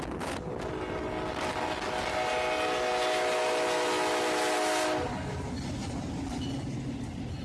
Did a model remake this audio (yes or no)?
no